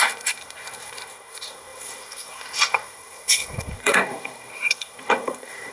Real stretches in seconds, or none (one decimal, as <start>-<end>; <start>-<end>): none